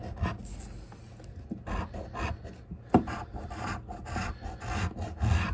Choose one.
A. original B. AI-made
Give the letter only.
A